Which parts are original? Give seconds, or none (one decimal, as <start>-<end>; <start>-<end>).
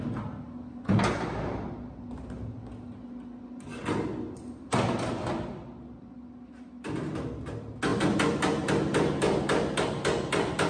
0.0-10.7